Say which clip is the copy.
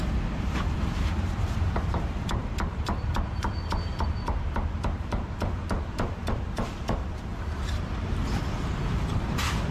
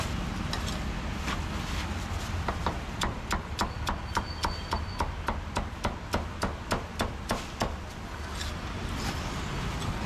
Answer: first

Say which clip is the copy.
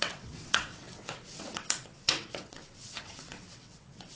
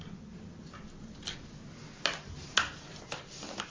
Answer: first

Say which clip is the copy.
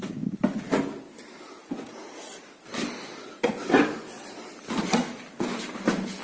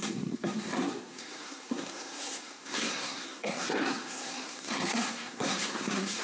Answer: second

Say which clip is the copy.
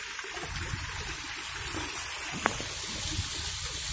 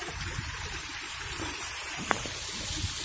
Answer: second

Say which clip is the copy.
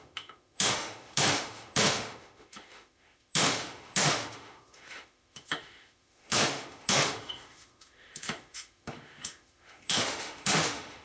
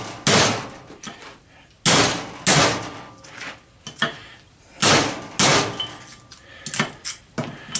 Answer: first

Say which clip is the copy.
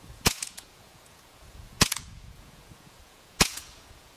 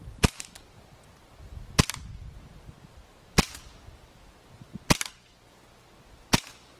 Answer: first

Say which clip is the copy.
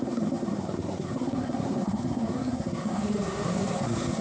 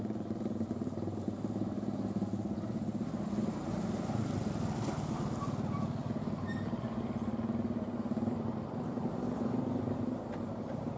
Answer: first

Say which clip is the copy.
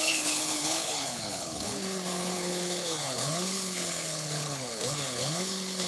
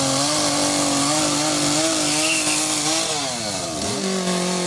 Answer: first